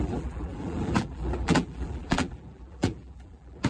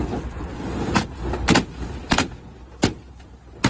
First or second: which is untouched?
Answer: second